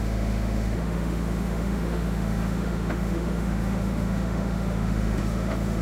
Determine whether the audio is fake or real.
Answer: fake